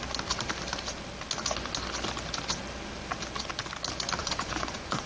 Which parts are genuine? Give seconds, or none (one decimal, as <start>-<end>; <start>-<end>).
0.0-4.2